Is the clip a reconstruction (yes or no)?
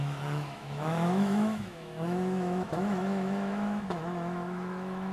yes